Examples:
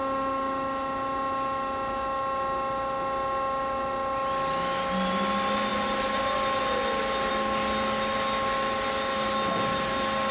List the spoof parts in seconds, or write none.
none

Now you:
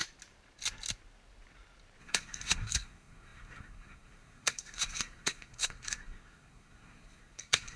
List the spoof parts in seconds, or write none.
2.0-7.8

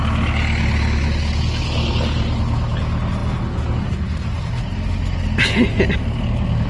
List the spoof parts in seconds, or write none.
none

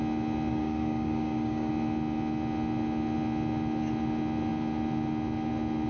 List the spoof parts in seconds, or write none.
0.5-1.7

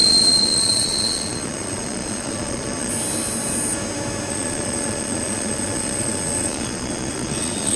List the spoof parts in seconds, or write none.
0.0-2.9; 4.3-7.8